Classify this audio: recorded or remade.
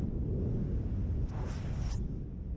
recorded